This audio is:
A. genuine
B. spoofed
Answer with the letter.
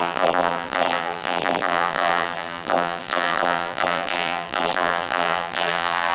B